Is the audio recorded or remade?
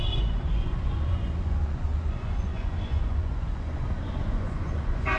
remade